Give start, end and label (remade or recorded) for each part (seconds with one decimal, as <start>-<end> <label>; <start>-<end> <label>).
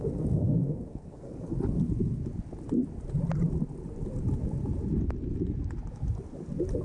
0.0-1.6 remade; 1.6-6.8 recorded